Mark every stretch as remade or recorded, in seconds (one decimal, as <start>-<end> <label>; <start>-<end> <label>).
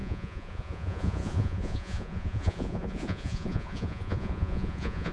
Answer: 0.0-5.1 remade